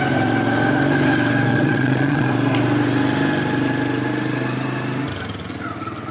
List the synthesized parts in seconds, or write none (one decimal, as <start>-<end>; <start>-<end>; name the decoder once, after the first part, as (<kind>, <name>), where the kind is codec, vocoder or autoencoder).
1.5-2.3 (vocoder, Vocos)

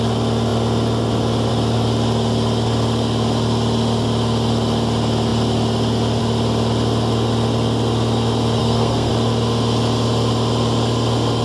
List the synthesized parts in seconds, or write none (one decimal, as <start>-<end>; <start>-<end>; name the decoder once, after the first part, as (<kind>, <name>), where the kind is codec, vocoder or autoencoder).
8.6-9.1 (codec, SNAC)

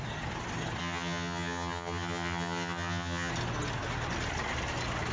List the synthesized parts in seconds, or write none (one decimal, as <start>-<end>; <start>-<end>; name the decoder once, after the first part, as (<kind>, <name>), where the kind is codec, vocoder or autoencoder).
0.8-3.3 (vocoder, HiFi-GAN)

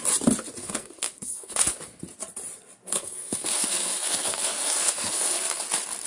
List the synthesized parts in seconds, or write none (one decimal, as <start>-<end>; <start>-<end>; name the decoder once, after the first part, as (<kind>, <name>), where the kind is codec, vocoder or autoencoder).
0.6-1.8 (codec, SNAC); 2.8-5.6

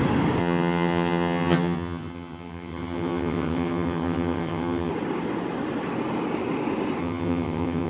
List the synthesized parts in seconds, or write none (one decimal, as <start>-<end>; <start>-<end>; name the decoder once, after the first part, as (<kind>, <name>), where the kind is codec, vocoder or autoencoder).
0.4-4.9 (vocoder, HiFi-GAN); 7.0-7.9